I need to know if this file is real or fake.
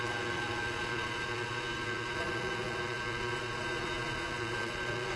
fake